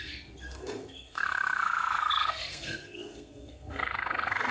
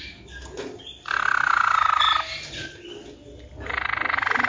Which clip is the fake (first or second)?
first